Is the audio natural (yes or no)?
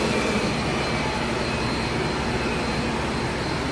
yes